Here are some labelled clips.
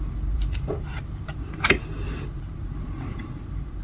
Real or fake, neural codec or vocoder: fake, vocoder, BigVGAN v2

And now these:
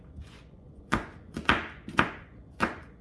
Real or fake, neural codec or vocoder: fake, vocoder, Vocos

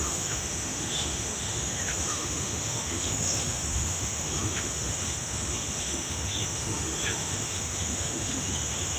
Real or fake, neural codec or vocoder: fake, autoencoder, DAC-VAE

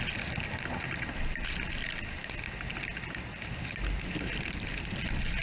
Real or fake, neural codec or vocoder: real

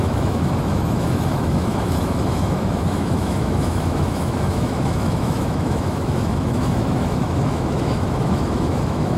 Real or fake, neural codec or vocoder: fake, autoencoder, DAC-VAE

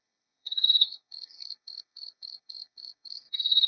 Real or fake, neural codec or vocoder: fake, codec, SNAC